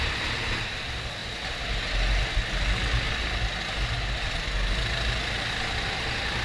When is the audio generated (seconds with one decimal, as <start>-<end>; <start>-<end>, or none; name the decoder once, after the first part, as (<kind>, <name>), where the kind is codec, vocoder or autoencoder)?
none